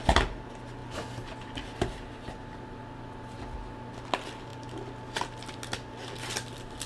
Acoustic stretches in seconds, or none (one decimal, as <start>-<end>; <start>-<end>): 0.0-6.9